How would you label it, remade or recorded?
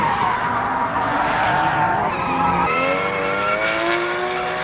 recorded